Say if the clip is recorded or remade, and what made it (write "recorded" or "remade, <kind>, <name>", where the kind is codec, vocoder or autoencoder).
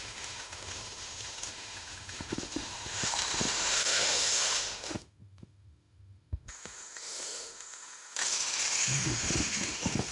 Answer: remade, autoencoder, DAC-VAE